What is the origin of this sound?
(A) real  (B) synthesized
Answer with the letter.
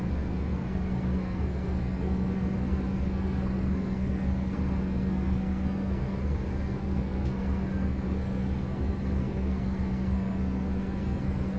B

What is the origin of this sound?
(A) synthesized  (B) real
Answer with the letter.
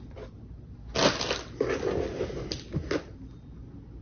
B